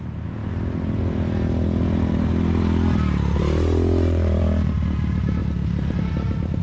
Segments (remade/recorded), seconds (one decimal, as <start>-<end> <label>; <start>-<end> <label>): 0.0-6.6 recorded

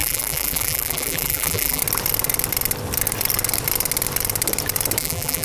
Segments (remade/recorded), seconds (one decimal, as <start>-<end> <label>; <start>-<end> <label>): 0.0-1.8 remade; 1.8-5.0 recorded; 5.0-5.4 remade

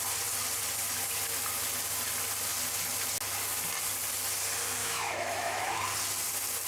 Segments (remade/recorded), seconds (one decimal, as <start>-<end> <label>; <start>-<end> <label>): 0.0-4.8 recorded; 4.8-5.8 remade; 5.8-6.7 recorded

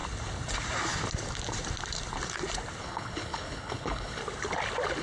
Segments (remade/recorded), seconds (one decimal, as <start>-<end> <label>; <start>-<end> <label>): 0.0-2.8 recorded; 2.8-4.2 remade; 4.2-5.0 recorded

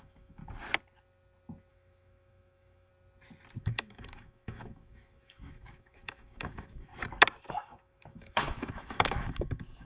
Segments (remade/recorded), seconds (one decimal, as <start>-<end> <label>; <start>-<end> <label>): 0.0-0.4 remade; 0.4-1.7 recorded; 1.7-2.9 remade; 2.9-3.6 recorded; 3.6-6.9 remade; 6.9-7.5 recorded; 7.5-9.9 remade

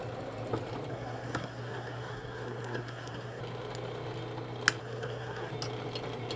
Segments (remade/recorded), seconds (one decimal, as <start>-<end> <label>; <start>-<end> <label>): 0.0-0.9 recorded; 0.9-3.4 remade; 3.4-4.8 recorded; 4.8-5.5 remade; 5.5-6.4 recorded

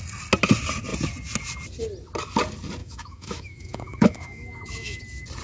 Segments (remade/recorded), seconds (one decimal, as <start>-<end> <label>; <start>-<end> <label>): 0.0-2.8 recorded; 2.8-5.0 remade; 5.0-5.4 recorded

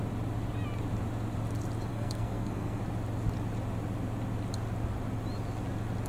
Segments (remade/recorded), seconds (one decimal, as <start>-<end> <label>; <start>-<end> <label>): 0.0-1.9 recorded; 1.9-2.8 remade; 2.8-6.1 recorded